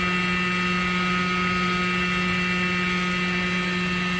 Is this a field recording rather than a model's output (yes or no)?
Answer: yes